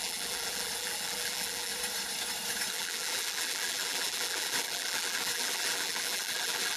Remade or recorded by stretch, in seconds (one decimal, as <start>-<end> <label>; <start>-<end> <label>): 0.0-1.7 remade; 1.7-2.7 recorded; 2.7-6.8 remade